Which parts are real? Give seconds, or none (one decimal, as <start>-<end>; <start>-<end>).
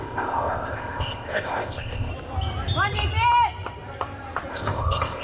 2.1-4.5